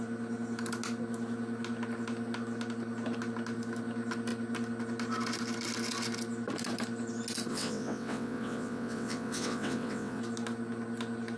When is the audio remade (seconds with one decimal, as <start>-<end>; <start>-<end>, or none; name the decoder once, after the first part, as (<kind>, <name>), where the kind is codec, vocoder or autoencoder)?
7.5-10.2 (vocoder, WaveNeXt)